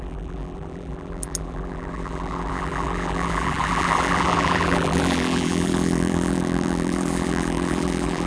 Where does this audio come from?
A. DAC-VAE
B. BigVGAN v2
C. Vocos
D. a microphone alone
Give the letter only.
B